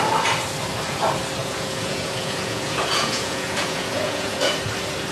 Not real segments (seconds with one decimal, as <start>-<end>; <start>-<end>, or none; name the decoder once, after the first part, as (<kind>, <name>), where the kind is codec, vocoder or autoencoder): 1.4-4.5 (vocoder, Vocos)